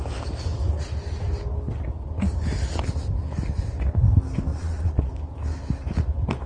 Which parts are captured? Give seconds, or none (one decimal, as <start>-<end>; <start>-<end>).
0.0-4.5; 5.1-6.5